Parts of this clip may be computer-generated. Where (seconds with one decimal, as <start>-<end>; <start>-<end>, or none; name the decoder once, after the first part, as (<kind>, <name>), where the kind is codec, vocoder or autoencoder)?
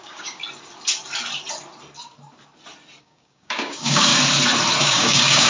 0.0-0.4 (codec, DAC); 3.0-4.1; 4.8-5.5